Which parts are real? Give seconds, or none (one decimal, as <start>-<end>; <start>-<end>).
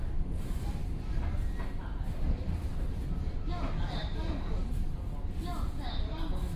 0.0-6.6